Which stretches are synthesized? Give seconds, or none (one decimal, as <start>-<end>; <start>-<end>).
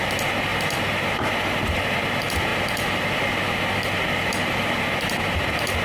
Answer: 0.5-2.0